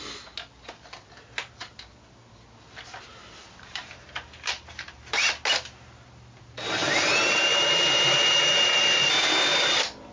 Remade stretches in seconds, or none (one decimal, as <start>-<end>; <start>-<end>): 3.2-5.3; 6.8-9.1